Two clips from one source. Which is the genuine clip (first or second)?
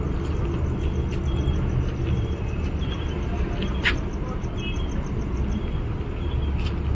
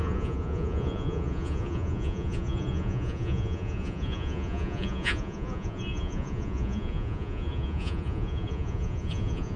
first